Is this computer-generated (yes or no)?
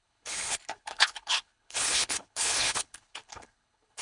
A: yes